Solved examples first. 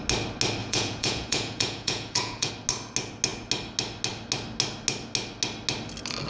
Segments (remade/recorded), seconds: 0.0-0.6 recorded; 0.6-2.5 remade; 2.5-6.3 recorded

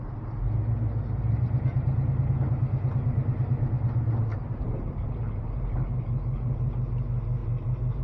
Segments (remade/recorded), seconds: 0.0-4.3 recorded; 4.3-6.7 remade; 6.7-7.4 recorded; 7.4-8.0 remade

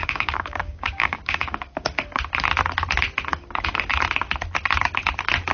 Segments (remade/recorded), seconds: 0.0-2.2 remade; 2.2-3.3 recorded; 3.3-4.0 remade; 4.0-5.5 recorded